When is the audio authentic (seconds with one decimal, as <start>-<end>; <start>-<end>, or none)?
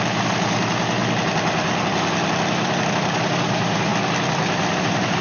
1.0-3.2; 3.9-4.8